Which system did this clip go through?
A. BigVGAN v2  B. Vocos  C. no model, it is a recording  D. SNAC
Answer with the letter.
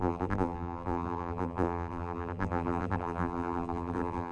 A